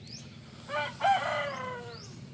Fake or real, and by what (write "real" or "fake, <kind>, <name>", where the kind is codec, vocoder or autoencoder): real